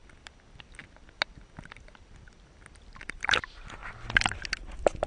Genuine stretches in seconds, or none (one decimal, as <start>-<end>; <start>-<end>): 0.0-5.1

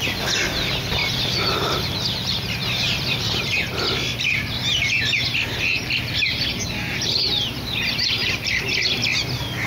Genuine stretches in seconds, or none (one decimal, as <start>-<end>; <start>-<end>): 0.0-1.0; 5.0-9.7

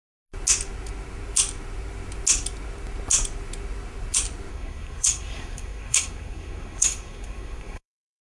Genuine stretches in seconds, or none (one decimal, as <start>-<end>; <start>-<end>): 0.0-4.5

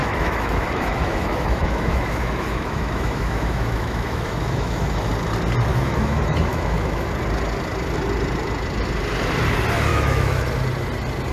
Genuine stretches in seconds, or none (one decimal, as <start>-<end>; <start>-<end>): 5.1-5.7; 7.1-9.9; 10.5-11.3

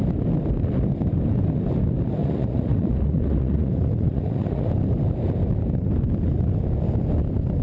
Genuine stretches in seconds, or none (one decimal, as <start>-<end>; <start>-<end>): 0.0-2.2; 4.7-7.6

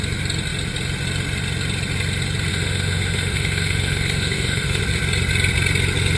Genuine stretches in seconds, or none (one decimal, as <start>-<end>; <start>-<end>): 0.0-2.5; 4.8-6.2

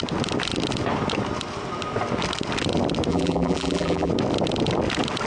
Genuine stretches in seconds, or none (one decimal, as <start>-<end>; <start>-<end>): 0.0-3.1; 4.1-5.3